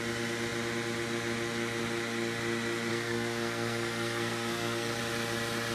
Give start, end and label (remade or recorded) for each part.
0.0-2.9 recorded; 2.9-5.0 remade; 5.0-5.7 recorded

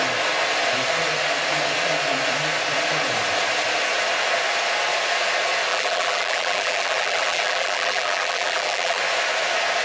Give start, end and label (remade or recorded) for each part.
0.0-5.7 recorded; 5.7-9.0 remade; 9.0-9.8 recorded

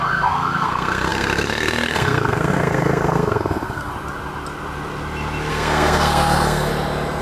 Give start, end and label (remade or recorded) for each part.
0.0-3.9 remade; 3.9-5.5 recorded; 5.5-6.7 remade; 6.7-7.2 recorded

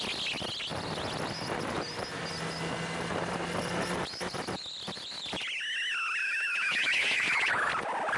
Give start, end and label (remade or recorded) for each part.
0.0-6.2 recorded; 6.2-7.7 remade; 7.7-8.2 recorded

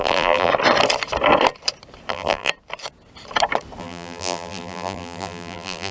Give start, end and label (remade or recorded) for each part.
0.0-0.5 remade; 0.5-2.1 recorded; 2.1-2.5 remade; 2.5-3.8 recorded; 3.8-5.9 remade